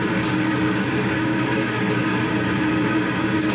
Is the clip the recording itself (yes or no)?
no